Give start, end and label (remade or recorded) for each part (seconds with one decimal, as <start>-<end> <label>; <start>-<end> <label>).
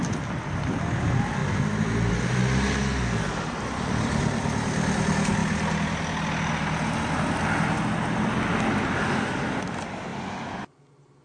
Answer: 0.0-11.2 recorded